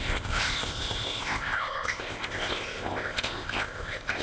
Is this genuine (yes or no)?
no